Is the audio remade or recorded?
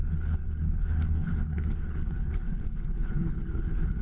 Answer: remade